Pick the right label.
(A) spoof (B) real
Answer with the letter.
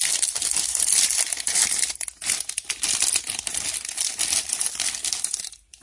B